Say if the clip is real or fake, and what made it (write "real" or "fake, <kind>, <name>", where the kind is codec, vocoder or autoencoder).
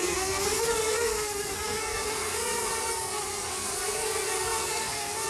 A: fake, codec, SNAC